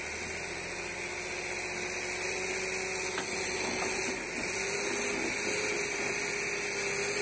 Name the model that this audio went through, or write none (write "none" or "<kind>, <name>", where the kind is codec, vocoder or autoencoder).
none